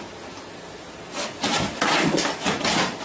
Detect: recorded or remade recorded